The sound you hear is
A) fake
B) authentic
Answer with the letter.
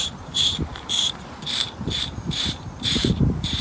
A